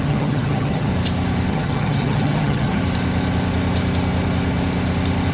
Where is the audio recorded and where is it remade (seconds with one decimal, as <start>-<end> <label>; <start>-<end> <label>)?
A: 0.0-0.9 remade; 0.9-1.5 recorded; 1.5-2.8 remade; 2.8-5.3 recorded